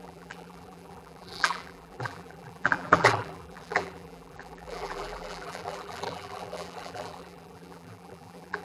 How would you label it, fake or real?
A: fake